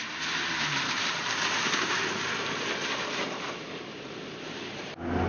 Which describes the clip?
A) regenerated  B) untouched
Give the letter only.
A